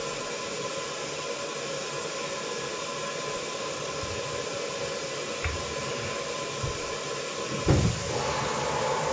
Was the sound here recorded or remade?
recorded